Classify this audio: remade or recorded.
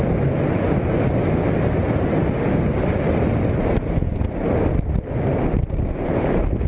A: recorded